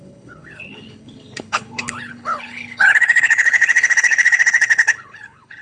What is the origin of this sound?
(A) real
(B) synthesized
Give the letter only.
B